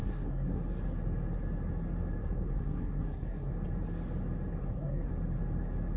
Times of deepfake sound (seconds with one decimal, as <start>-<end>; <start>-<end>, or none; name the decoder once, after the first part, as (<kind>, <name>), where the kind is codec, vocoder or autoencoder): 0.0-0.6 (codec, SNAC); 2.2-3.5; 4.6-5.1